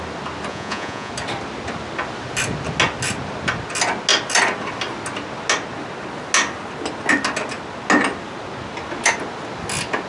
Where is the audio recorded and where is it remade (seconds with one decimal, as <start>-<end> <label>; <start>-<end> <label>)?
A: 0.0-0.5 recorded; 0.5-1.1 remade; 1.1-10.1 recorded